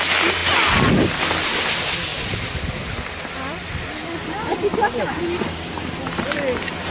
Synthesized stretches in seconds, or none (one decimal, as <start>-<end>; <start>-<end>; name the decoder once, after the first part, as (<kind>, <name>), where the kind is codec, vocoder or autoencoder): 2.1-3.6 (vocoder, BigVGAN v2); 4.5-5.1